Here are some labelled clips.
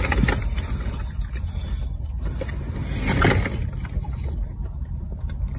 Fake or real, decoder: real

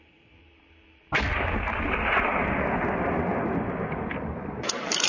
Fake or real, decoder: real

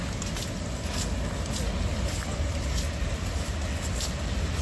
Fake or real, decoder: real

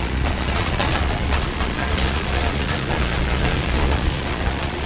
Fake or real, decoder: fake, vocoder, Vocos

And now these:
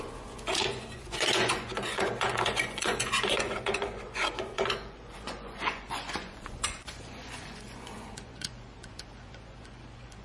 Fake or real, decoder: fake, vocoder, Vocos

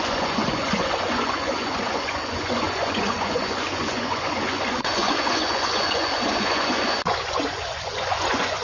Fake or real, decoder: fake, vocoder, Vocos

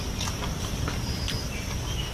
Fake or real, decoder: real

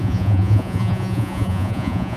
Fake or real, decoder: fake, vocoder, Vocos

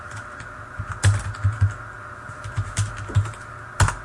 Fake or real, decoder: real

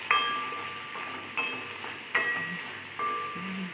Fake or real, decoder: real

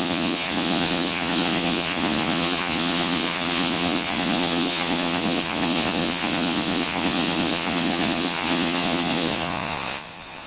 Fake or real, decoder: fake, vocoder, Vocos